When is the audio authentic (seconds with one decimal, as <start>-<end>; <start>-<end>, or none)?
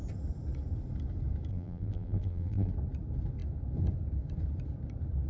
0.0-1.5; 2.7-5.3